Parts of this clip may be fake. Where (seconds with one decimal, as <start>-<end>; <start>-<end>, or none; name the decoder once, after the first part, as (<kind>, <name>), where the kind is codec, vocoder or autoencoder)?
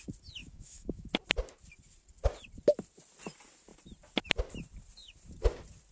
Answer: 0.4-1.1 (autoencoder, DAC-VAE)